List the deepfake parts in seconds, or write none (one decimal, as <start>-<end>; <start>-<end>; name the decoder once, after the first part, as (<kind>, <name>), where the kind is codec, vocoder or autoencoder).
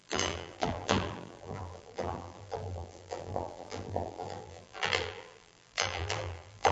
0.0-6.7 (vocoder, BigVGAN v2)